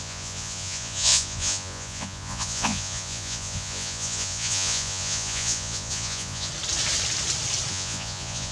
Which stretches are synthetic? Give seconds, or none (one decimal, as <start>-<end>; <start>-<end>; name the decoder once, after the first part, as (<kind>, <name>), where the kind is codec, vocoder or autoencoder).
0.0-6.5 (vocoder, Vocos); 7.7-8.5